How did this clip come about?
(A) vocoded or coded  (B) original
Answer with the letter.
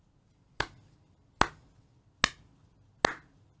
B